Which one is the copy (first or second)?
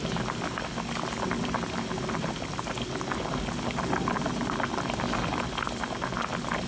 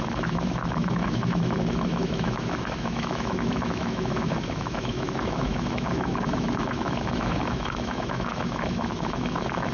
second